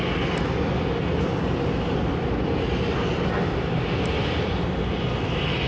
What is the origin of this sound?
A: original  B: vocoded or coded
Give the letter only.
A